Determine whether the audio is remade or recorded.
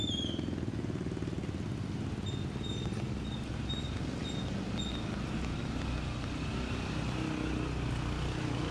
recorded